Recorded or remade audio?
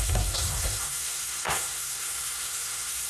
remade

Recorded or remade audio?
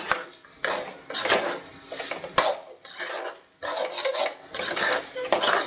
recorded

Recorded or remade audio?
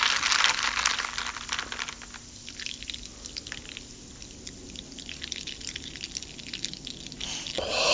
recorded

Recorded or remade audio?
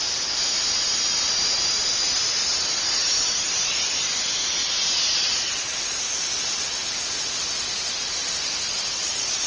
recorded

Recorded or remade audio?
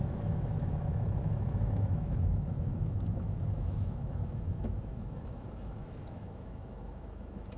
remade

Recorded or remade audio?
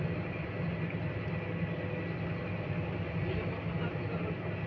recorded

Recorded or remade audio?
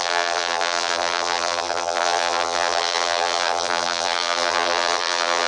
remade